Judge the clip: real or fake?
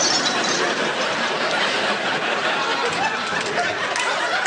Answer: real